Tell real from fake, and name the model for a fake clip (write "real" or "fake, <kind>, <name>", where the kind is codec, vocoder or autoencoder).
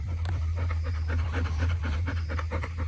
fake, vocoder, BigVGAN v2